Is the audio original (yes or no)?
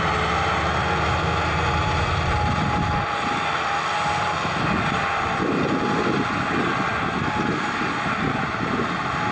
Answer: yes